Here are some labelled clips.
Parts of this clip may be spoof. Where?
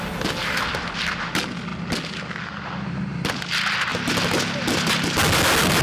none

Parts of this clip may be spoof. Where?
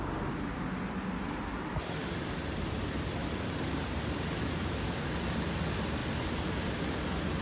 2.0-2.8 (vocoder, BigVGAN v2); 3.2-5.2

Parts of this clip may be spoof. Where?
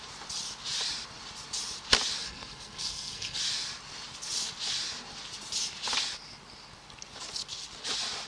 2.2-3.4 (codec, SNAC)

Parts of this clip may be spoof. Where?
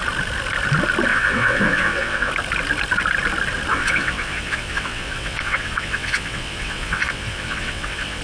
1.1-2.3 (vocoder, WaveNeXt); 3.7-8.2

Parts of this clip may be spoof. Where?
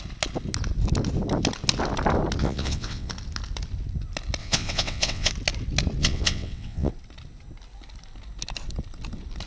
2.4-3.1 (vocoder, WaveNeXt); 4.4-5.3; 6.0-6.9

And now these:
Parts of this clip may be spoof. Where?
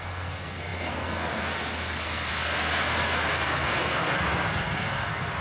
0.0-5.4 (codec, SNAC)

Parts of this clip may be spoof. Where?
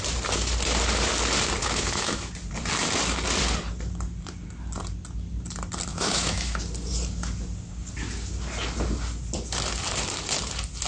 1.6-2.3 (autoencoder, DAC-VAE); 5.9-6.6